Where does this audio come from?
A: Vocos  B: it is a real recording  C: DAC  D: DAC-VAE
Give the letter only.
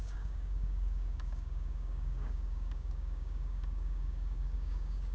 C